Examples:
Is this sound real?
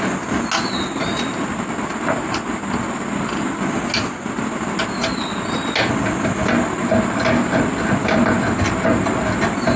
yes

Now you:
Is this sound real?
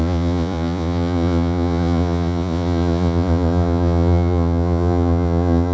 no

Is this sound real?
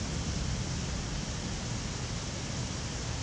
yes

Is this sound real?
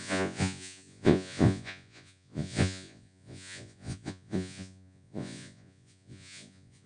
no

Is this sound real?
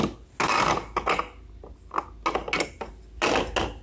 yes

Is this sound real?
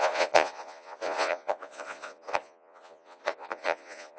no